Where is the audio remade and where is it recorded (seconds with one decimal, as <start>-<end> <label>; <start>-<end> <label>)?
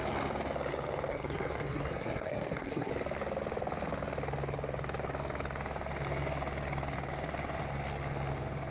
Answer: 0.0-1.1 recorded; 1.1-2.9 remade; 2.9-8.7 recorded